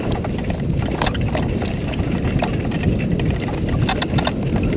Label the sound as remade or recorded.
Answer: recorded